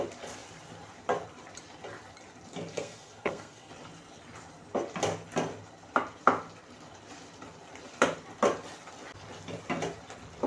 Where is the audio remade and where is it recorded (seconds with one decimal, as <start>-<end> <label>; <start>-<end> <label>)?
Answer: 0.0-2.7 recorded; 2.7-3.7 remade; 3.7-10.5 recorded